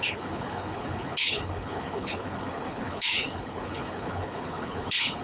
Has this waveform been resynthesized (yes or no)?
yes